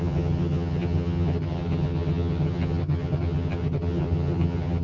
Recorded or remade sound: remade